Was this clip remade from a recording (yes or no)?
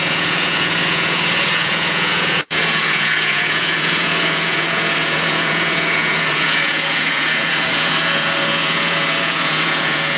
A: yes